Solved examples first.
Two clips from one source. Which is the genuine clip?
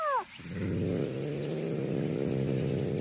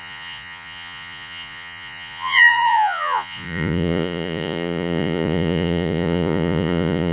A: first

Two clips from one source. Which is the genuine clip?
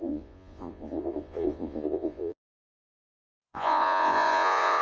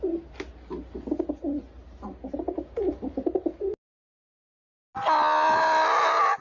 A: second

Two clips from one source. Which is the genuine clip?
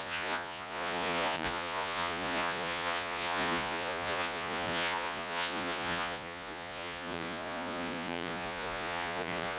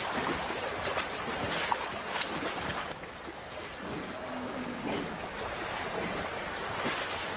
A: second